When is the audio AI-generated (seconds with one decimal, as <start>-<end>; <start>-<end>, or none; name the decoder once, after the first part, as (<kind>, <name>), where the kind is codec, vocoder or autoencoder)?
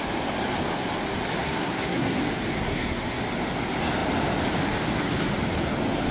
1.4-2.2 (codec, SNAC); 2.6-3.2